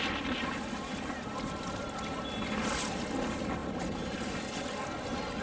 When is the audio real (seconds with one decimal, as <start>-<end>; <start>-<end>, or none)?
0.0-5.4